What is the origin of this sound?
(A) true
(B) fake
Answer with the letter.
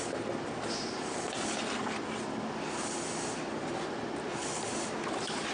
A